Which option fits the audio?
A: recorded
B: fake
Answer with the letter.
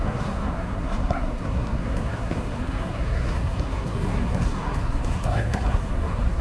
B